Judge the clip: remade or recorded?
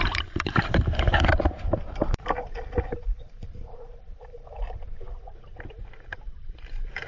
remade